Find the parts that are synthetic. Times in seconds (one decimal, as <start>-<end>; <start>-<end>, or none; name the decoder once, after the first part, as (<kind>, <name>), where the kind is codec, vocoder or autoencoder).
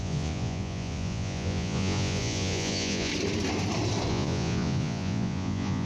0.0-3.1 (vocoder, Vocos); 4.1-5.9